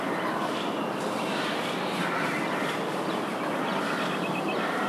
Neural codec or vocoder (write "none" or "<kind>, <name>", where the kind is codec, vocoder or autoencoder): none